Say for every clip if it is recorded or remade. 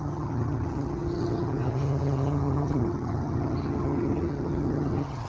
remade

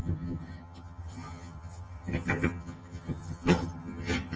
remade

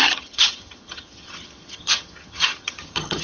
remade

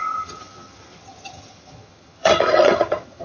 remade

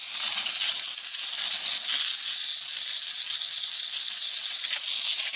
recorded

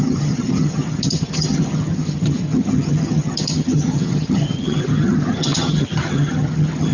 remade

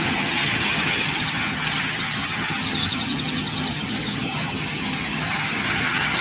remade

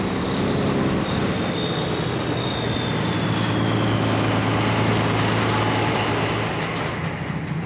recorded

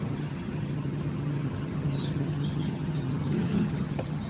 remade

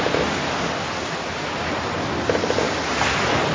recorded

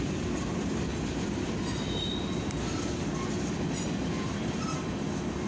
recorded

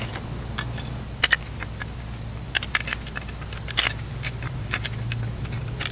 recorded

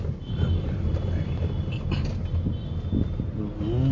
recorded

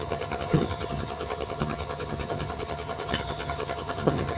remade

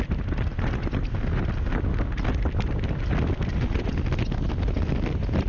recorded